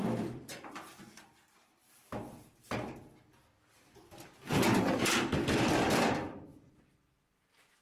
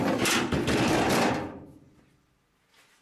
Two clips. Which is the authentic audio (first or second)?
second